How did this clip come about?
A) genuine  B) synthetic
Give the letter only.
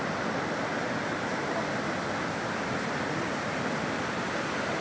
A